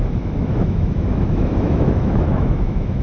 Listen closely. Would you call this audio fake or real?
fake